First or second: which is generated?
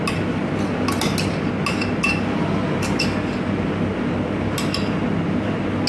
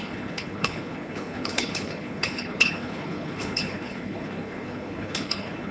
second